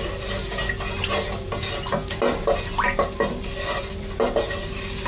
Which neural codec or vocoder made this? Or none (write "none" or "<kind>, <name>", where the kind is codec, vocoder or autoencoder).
none